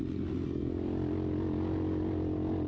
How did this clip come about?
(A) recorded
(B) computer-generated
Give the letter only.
A